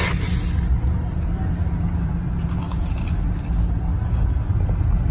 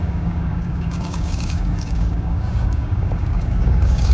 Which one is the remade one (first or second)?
second